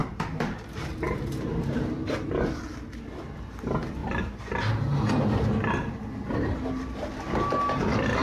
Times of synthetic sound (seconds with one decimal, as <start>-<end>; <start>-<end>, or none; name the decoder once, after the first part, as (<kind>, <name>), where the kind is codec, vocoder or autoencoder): 0.0-2.3 (vocoder, BigVGAN v2); 4.0-5.1